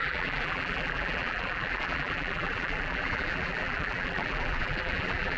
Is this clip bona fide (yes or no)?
no